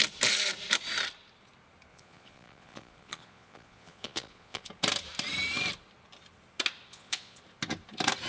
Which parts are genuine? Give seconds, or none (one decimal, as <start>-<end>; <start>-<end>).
0.0-1.9; 4.7-6.9; 7.4-8.3